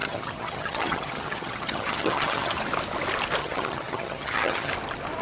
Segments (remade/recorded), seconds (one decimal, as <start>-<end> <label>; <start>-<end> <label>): 0.0-2.6 remade; 2.6-3.4 recorded; 3.4-4.7 remade; 4.7-5.2 recorded